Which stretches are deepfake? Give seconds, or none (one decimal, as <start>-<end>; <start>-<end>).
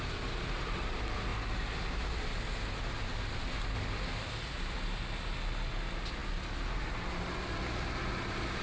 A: none